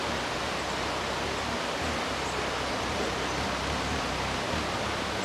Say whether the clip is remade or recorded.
recorded